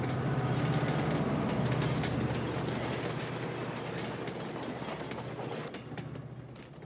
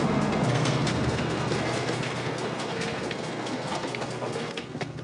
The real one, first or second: first